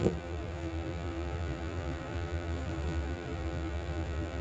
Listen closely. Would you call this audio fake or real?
fake